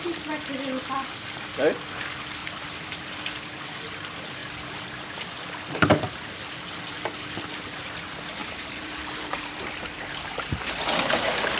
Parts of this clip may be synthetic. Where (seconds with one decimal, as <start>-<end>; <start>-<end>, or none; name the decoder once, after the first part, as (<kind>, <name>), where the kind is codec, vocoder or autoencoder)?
2.4-3.2 (vocoder, BigVGAN v2); 8.4-9.5